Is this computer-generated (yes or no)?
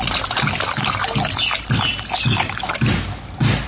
no